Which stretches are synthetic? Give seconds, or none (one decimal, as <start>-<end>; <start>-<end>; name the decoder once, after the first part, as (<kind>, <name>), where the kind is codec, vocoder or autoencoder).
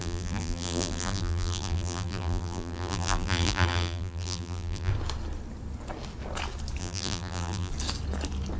0.0-4.9 (vocoder, BigVGAN v2); 6.8-7.7